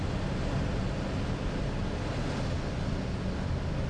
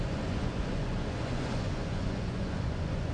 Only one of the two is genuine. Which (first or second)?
first